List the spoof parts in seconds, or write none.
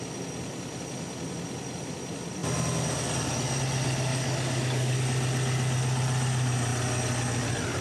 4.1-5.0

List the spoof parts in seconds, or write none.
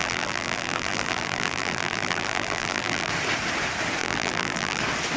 0.0-3.1; 4.0-4.8